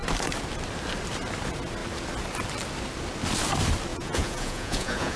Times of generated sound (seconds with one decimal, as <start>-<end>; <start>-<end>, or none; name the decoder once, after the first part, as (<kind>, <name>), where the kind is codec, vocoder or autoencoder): 3.9-5.2 (vocoder, Vocos)